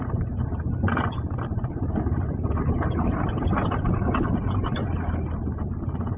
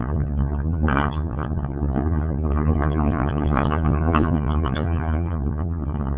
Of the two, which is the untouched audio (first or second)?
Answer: first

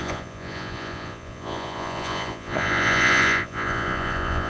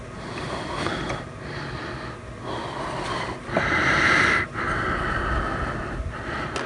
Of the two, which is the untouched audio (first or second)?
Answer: second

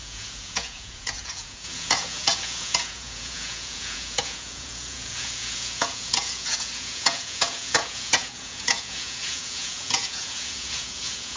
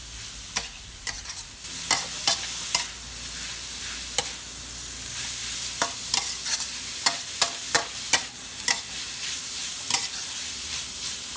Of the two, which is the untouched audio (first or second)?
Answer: second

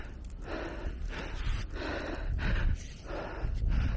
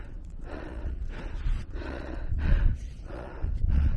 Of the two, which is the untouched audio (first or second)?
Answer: first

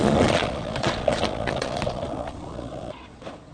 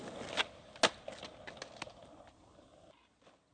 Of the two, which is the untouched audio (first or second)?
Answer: second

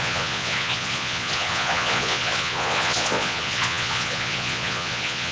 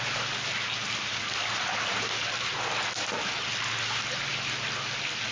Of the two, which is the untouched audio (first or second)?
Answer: second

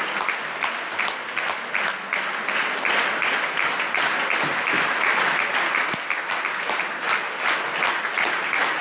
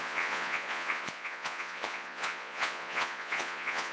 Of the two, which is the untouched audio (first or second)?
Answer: first